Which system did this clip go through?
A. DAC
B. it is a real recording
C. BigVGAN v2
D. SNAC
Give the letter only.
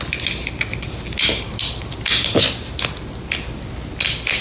B